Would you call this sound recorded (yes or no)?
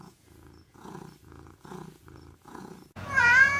no